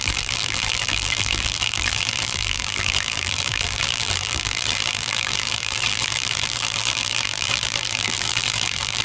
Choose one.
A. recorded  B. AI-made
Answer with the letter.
B